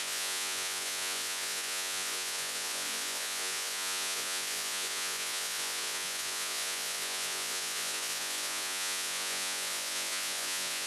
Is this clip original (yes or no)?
no